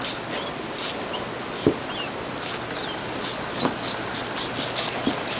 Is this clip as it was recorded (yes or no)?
yes